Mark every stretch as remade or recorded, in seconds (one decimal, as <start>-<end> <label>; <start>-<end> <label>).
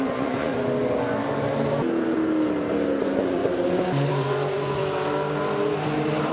0.0-0.5 remade; 0.5-3.0 recorded; 3.0-3.4 remade; 3.4-4.1 recorded; 4.1-4.8 remade; 4.8-6.3 recorded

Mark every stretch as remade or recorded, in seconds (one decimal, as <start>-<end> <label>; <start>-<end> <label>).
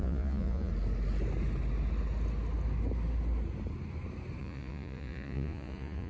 0.0-0.7 remade; 0.7-4.4 recorded; 4.4-6.1 remade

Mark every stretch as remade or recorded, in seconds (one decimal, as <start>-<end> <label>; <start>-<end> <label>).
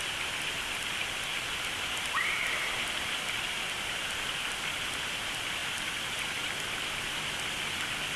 0.0-8.2 recorded